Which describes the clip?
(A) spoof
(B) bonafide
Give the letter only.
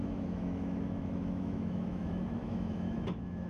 A